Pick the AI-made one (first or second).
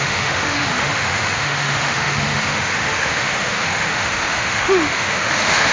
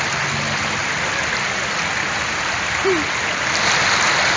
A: first